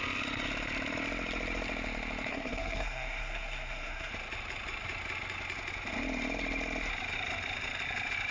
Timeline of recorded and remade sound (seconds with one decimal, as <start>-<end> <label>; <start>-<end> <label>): 0.0-2.3 recorded; 2.3-4.1 remade; 4.1-8.3 recorded